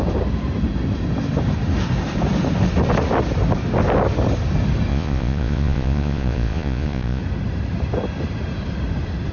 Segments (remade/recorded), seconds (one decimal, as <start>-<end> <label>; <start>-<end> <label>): 0.0-4.9 recorded; 4.9-7.2 remade; 7.2-9.3 recorded